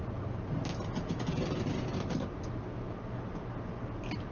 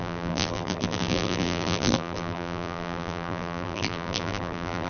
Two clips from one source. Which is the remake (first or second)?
second